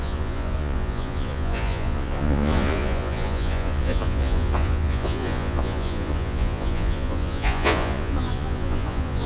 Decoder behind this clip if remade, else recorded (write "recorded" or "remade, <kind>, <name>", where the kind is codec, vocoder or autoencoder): remade, vocoder, Vocos